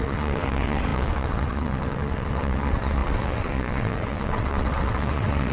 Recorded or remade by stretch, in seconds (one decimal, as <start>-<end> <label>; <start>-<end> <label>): 0.0-5.5 remade